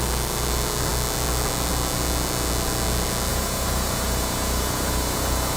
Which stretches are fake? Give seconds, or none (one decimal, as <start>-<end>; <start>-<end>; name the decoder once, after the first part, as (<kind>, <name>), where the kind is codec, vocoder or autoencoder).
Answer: 3.3-5.6 (vocoder, Vocos)